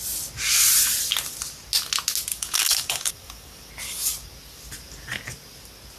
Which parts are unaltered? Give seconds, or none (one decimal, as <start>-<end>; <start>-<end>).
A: 0.0-2.3; 3.7-6.0